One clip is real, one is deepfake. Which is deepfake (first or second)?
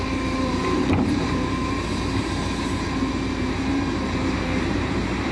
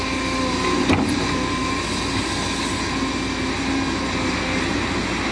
first